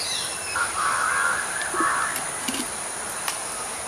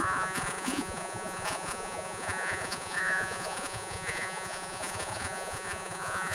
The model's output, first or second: second